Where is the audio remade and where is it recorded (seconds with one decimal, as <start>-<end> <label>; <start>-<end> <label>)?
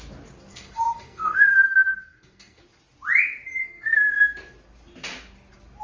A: 0.0-0.5 recorded; 0.5-2.6 remade; 2.6-3.6 recorded; 3.6-4.2 remade; 4.2-5.8 recorded